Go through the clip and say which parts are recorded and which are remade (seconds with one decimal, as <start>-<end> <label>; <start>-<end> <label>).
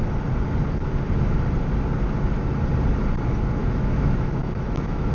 0.0-3.6 recorded; 3.6-5.1 remade